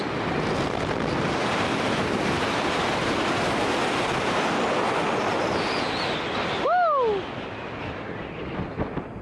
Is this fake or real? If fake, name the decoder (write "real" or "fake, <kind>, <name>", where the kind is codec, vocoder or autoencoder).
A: real